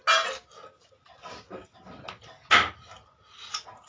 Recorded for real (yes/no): yes